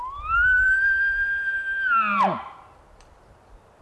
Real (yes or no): yes